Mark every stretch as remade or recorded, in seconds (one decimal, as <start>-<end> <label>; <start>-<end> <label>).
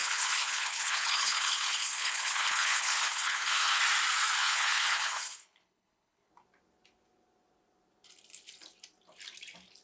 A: 0.0-3.8 remade; 3.8-4.4 recorded; 4.4-6.3 remade; 6.3-9.8 recorded